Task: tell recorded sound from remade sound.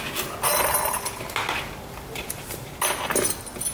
recorded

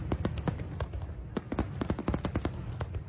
recorded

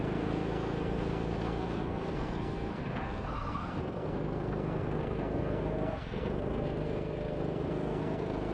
remade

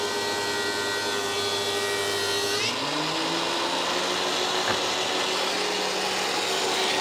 recorded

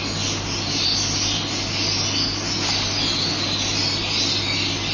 recorded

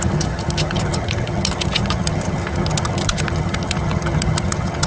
remade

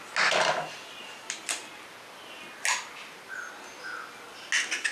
recorded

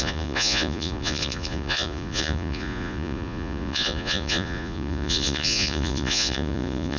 remade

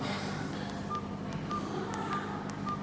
recorded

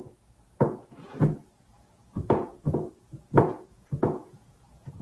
remade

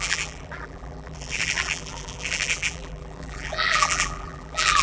remade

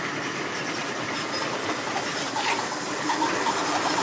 recorded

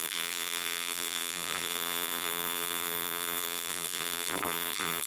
remade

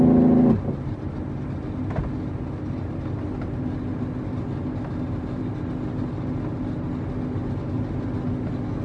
recorded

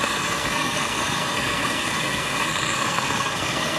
remade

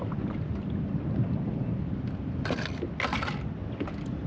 recorded